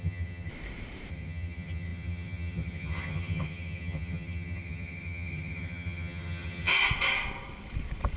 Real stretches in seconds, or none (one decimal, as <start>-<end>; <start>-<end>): 0.5-1.1; 6.7-8.2